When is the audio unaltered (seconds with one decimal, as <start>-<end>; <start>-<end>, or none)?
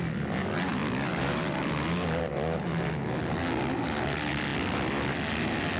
0.0-5.8